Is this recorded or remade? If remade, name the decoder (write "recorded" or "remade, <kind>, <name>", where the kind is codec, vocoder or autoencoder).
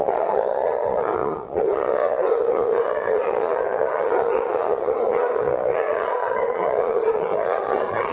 remade, vocoder, Vocos